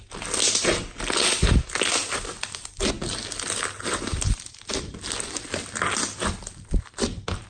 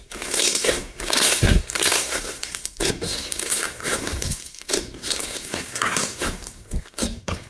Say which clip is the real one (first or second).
first